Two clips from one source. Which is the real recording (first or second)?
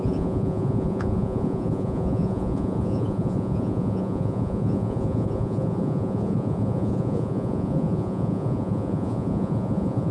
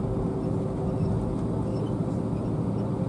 second